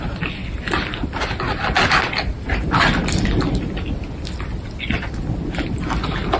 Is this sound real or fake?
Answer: real